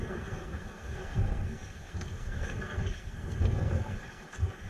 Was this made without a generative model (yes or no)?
no